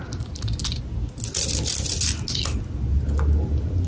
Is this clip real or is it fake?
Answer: real